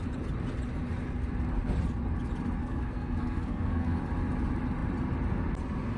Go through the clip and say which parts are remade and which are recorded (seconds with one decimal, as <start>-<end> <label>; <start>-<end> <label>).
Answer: 0.0-2.6 recorded; 2.6-4.0 remade; 4.0-6.0 recorded